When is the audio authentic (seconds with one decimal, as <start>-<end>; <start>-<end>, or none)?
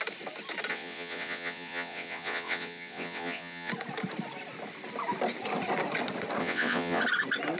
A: 0.0-0.7; 3.7-6.4; 7.0-7.6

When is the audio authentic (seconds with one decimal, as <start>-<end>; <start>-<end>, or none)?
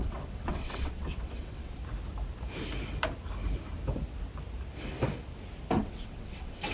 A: 1.8-5.8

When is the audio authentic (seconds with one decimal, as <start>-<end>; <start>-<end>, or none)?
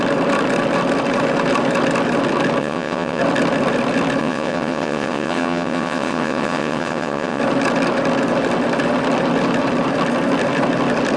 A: 0.0-2.6; 3.2-4.2; 7.4-11.2